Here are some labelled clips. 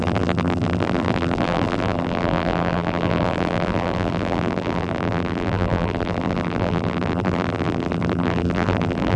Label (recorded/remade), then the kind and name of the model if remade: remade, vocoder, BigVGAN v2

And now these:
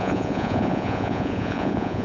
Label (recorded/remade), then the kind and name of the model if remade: remade, vocoder, Vocos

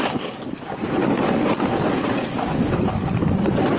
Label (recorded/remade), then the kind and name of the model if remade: recorded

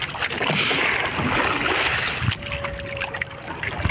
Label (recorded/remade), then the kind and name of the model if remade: recorded